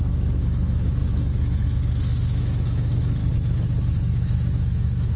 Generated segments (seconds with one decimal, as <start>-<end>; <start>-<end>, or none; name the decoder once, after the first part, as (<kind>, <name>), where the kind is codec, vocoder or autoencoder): 0.0-3.2 (autoencoder, DAC-VAE); 4.0-5.2